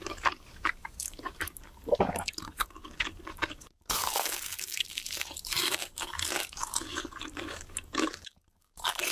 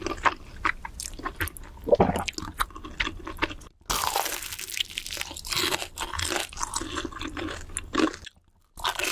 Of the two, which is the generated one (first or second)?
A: first